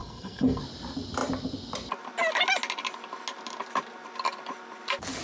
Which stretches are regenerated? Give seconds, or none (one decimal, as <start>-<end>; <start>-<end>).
0.0-0.6